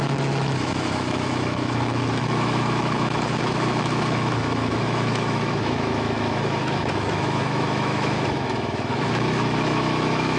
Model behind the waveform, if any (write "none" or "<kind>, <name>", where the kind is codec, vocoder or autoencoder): autoencoder, DAC-VAE